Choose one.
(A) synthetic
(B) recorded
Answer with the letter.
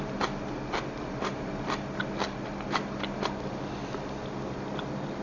B